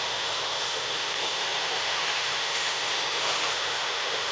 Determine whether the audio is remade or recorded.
remade